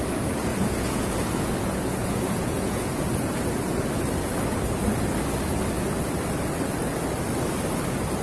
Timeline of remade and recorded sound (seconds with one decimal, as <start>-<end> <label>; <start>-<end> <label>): 0.0-0.5 recorded; 0.5-3.0 remade; 3.0-8.2 recorded